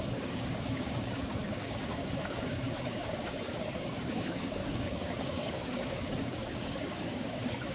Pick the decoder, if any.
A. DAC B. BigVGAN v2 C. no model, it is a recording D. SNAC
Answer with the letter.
A